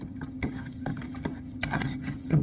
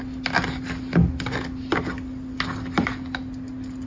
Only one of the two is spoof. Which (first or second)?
first